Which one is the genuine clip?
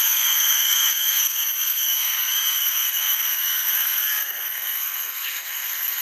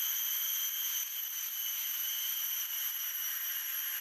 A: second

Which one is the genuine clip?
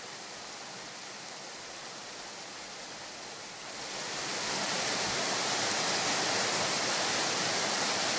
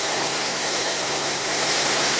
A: first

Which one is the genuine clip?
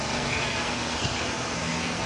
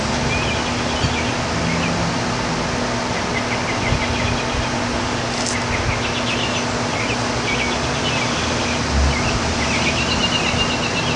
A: second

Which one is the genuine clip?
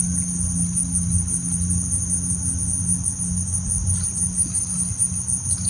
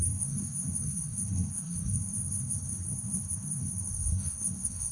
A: first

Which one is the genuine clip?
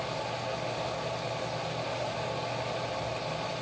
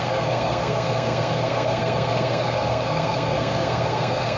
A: first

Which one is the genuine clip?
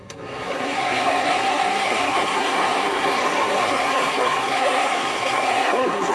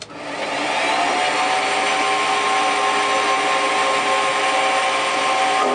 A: second